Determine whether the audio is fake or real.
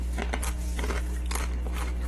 real